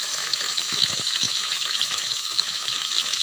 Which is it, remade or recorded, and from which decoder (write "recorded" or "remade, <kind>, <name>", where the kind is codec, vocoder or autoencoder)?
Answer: remade, autoencoder, DAC-VAE